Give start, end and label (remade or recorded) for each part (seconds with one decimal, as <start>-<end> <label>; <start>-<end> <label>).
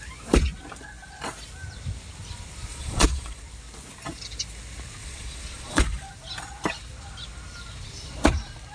0.0-2.7 recorded; 2.7-3.4 remade; 3.4-5.0 recorded; 5.0-6.1 remade; 6.1-8.7 recorded